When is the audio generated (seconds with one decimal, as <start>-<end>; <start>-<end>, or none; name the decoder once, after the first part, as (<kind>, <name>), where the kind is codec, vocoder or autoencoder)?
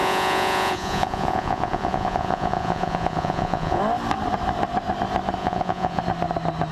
0.0-3.8 (vocoder, Vocos); 5.4-6.0